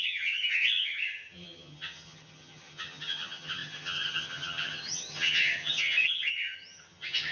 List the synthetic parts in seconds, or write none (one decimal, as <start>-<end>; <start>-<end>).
0.0-7.3